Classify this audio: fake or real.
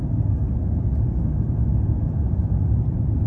real